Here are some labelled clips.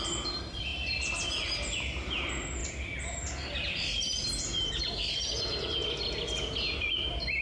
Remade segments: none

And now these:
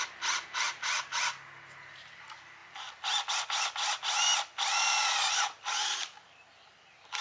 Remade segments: none

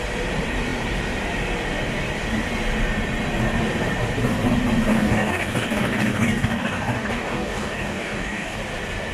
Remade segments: 4.9-8.6 (codec, DAC)